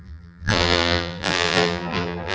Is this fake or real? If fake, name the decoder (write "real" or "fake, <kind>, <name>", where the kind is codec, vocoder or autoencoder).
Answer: fake, vocoder, BigVGAN v2